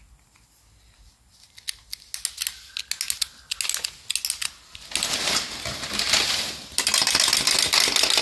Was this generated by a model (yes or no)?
no